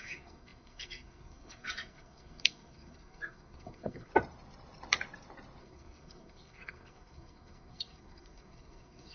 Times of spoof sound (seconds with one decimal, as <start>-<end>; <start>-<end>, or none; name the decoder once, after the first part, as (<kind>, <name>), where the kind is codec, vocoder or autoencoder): 0.0-4.1 (codec, SNAC); 5.6-9.1